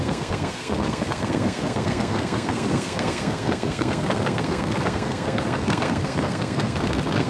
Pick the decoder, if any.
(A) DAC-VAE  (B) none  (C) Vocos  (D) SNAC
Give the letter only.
D